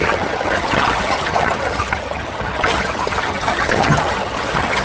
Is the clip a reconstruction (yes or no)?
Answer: yes